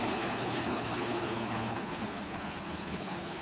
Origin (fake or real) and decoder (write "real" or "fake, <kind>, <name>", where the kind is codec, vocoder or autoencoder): fake, codec, HILCodec